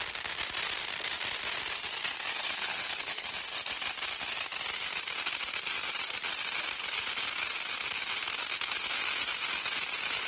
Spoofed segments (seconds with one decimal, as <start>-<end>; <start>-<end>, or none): 2.4-3.3